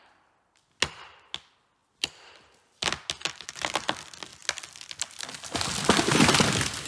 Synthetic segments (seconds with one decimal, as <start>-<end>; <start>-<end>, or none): none